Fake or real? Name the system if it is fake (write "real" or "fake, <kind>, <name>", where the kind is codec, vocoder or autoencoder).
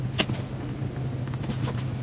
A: real